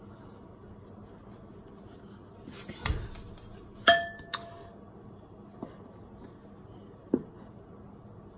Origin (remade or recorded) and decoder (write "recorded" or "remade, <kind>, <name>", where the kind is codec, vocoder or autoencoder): recorded